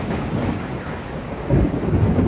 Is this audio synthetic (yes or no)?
yes